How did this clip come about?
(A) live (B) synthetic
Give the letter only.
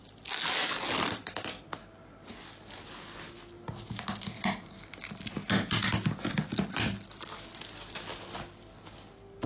A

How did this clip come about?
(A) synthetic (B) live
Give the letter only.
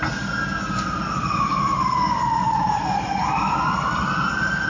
B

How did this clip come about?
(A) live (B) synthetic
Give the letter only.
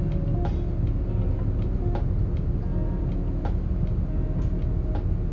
A